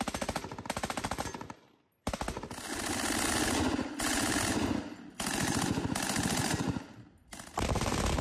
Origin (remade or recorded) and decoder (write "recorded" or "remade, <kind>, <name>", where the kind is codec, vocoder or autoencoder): recorded